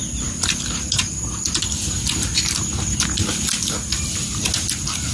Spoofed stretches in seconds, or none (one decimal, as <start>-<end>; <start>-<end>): none